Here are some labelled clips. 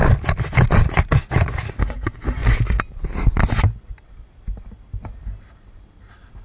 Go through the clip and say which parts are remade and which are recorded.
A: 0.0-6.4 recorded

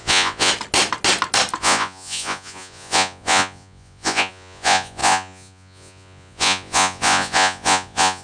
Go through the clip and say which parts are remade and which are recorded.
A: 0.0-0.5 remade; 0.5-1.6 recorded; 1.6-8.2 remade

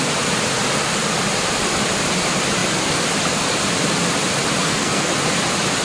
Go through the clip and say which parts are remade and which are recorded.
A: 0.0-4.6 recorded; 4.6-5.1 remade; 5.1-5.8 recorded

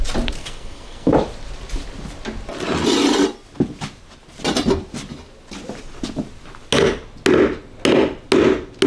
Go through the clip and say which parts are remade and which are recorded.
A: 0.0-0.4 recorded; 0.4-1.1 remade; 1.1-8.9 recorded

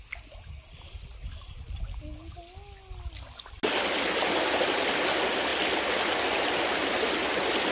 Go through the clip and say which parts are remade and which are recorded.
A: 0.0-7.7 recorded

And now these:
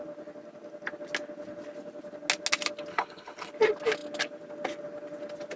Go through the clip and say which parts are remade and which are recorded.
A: 0.0-2.9 recorded; 2.9-3.5 remade; 3.5-5.6 recorded